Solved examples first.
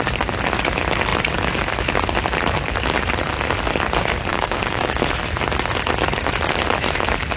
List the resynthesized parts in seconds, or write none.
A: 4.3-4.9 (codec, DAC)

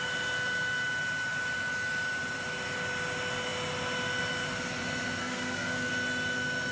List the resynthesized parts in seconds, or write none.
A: 5.2-5.9 (codec, SNAC)

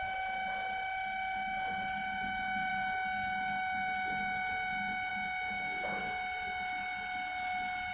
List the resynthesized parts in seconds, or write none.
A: none

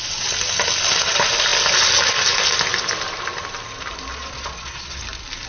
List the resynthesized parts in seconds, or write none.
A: 4.1-5.0 (vocoder, Vocos)